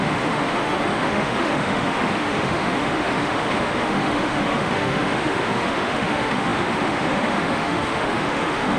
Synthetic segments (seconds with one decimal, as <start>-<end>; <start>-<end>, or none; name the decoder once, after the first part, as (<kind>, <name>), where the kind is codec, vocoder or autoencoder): 0.0-8.8 (autoencoder, DAC-VAE)